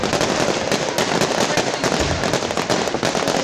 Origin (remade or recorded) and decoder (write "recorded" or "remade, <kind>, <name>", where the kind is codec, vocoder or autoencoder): recorded